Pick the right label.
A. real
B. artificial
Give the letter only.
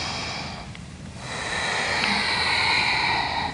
A